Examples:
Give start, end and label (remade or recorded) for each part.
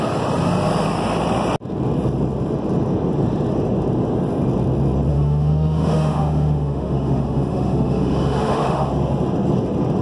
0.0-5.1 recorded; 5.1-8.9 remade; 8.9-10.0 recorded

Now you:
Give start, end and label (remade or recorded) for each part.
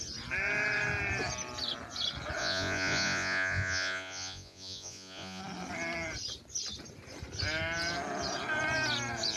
0.0-2.4 recorded; 2.4-5.4 remade; 5.4-9.4 recorded